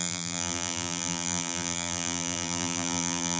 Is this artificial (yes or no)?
yes